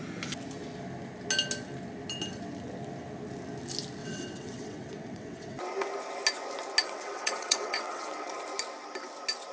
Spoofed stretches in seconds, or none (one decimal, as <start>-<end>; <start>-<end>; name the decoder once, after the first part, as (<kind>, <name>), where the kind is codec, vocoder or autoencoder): 4.0-5.6 (vocoder, WaveNeXt); 6.8-8.3